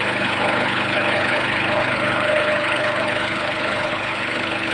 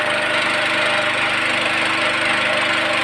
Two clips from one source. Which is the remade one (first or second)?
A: first